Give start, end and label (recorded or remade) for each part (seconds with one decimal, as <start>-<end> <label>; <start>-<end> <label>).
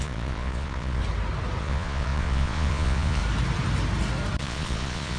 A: 0.0-1.0 remade; 1.0-1.6 recorded; 1.6-3.2 remade; 3.2-4.4 recorded; 4.4-5.2 remade